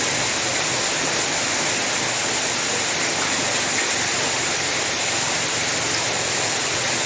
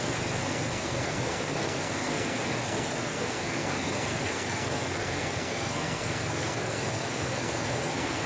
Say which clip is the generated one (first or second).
second